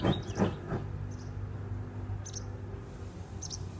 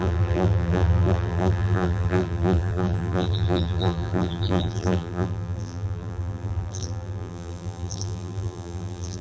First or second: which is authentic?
first